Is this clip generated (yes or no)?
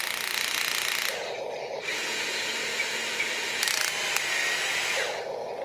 no